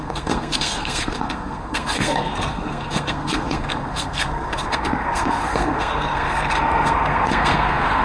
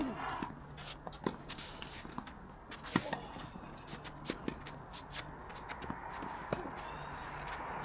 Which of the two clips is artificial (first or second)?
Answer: first